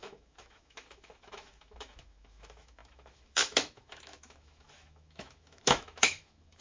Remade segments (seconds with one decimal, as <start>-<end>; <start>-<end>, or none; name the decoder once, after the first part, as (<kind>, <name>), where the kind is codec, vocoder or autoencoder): 0.0-6.6 (autoencoder, DAC-VAE)